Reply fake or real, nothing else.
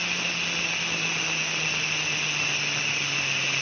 real